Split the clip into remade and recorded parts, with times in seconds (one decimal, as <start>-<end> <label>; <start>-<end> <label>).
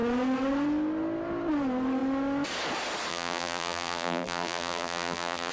0.0-3.1 recorded; 3.1-5.5 remade